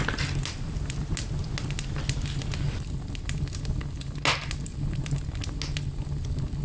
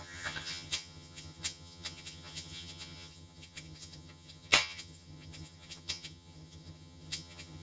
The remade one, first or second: second